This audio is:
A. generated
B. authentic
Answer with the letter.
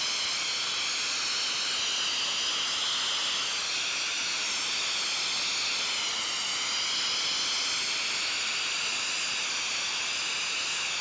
B